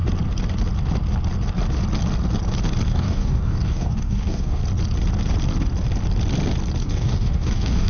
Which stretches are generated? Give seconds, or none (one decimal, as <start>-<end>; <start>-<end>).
2.9-4.6; 6.8-7.9

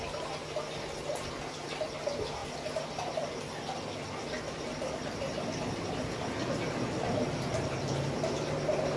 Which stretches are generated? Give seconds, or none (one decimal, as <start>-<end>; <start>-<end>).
none

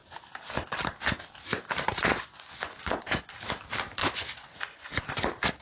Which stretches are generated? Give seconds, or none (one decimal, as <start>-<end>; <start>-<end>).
2.1-3.3; 4.0-5.0

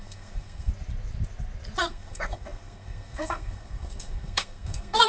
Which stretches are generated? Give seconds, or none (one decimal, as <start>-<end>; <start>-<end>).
0.0-0.7; 1.8-5.1

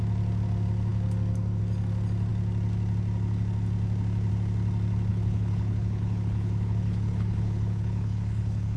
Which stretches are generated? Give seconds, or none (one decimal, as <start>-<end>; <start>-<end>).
5.1-8.8

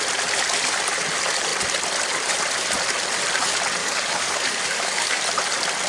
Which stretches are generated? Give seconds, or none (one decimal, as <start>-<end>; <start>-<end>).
3.8-5.2

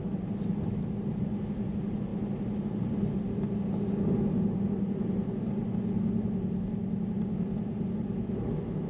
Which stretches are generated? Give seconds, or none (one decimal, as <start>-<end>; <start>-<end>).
none